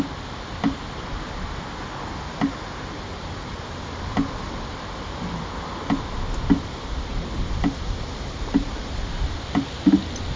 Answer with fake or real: real